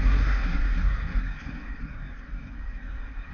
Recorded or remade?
remade